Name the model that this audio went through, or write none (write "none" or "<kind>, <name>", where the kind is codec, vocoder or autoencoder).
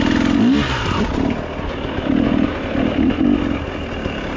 none